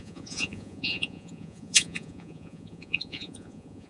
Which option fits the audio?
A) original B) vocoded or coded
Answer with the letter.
B